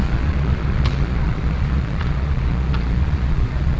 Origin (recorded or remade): remade